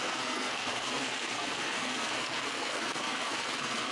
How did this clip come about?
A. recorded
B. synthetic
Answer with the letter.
B